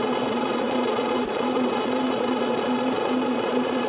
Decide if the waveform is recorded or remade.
remade